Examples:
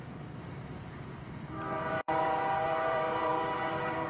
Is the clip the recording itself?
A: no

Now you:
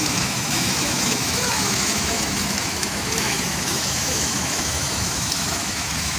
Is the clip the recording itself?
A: no